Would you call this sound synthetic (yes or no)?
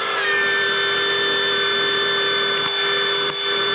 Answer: no